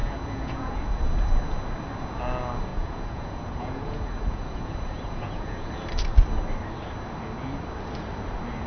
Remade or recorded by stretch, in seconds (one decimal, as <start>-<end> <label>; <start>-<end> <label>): 0.0-1.0 remade; 1.0-2.7 recorded; 2.7-5.7 remade; 5.7-8.7 recorded